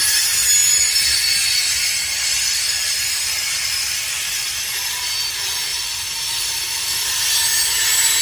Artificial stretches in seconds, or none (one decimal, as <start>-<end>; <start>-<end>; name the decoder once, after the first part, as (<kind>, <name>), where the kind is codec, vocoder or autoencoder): 0.6-4.6 (vocoder, BigVGAN v2); 5.7-7.4

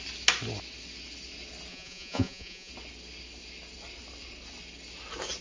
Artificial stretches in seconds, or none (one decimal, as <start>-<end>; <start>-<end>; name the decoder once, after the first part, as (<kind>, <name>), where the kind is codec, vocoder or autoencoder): 1.7-2.7 (vocoder, Vocos)